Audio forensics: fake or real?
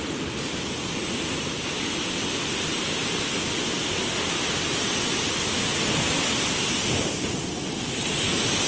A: real